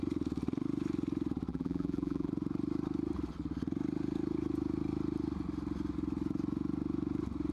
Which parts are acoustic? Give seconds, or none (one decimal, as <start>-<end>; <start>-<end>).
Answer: 0.0-1.5; 2.3-7.5